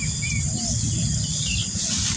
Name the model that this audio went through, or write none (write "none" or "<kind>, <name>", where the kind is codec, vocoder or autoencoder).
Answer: none